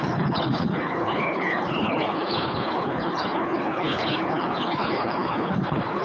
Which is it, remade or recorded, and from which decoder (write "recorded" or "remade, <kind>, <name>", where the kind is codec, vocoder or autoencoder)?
remade, codec, HILCodec